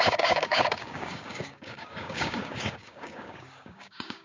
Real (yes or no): no